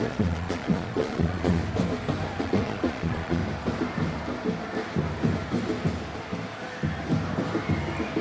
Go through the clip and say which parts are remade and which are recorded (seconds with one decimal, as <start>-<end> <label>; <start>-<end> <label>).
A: 0.0-1.6 remade; 1.6-2.4 recorded; 2.4-3.4 remade; 3.4-8.2 recorded